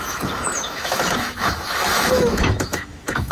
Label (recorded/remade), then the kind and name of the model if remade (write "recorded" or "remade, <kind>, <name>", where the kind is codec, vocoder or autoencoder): remade, autoencoder, DAC-VAE